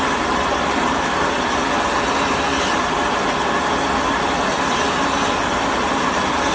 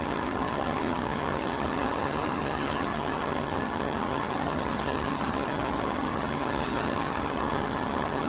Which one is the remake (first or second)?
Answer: second